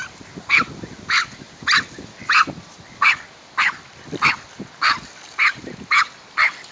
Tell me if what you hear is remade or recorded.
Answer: recorded